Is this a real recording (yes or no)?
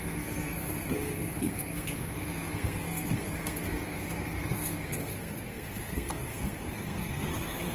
no